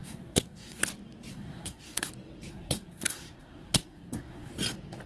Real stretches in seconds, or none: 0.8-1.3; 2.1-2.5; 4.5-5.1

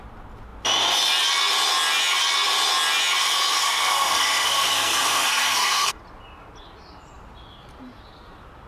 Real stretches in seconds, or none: 0.0-3.6; 6.0-8.7

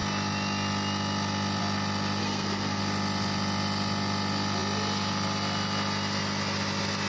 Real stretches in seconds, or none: 0.0-2.2; 2.8-7.1